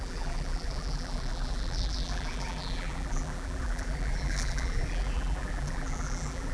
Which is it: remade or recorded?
remade